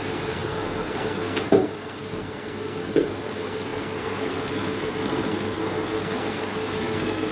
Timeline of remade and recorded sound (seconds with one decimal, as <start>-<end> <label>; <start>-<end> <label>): 0.0-7.3 remade